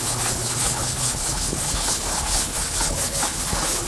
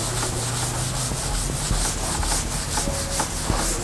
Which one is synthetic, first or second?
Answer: first